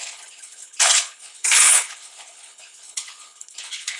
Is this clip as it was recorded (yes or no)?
no